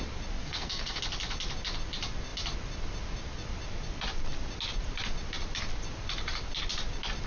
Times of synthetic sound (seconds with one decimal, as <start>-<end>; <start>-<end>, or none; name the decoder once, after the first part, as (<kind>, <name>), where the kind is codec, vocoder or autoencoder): 0.4-1.0 (codec, SNAC)